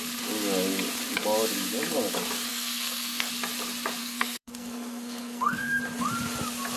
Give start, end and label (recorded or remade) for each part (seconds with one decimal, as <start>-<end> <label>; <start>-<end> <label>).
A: 0.0-2.5 recorded; 2.5-3.3 remade; 3.3-4.0 recorded; 4.0-5.8 remade; 5.8-6.8 recorded